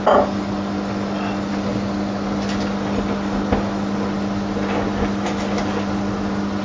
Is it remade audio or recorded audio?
recorded